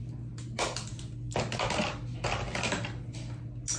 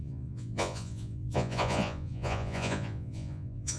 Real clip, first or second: first